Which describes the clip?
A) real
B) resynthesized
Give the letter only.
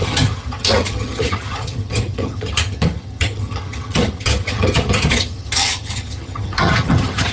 B